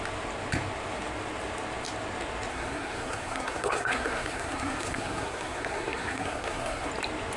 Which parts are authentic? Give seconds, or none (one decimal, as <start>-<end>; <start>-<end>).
0.0-2.5; 6.9-7.4